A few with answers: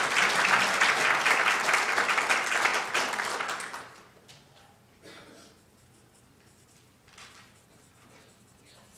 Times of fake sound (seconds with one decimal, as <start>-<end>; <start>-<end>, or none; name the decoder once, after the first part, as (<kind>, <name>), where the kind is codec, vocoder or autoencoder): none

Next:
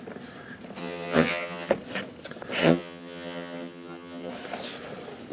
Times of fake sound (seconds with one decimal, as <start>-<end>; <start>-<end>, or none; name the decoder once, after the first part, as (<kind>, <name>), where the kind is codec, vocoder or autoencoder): 0.8-1.7 (vocoder, HiFi-GAN); 2.6-4.3

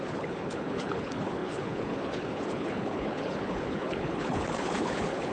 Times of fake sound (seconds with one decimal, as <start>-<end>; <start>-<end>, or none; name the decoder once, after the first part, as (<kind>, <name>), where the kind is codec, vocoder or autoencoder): 0.0-5.3 (codec, HILCodec)

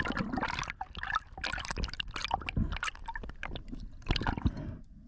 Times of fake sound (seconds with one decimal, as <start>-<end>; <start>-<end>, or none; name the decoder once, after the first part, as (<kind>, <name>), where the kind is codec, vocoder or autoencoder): none

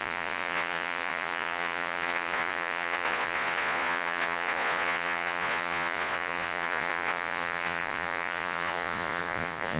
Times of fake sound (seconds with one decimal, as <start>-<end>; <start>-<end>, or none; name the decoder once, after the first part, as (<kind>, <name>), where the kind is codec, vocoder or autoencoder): 0.0-9.8 (vocoder, Vocos)

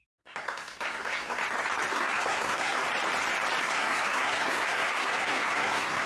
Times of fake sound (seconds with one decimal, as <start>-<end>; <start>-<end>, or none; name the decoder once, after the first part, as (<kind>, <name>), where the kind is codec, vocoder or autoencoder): 0.0-1.4 (codec, SNAC); 1.9-2.8; 3.6-6.1

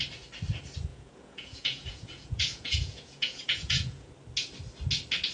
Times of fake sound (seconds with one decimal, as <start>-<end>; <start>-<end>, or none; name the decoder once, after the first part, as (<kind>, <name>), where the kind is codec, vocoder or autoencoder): 0.9-4.1 (vocoder, Vocos)

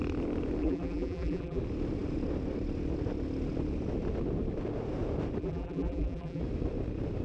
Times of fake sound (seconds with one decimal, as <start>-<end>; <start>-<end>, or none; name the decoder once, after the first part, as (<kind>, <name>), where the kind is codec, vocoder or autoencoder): 0.6-1.6 (vocoder, BigVGAN v2); 5.4-6.4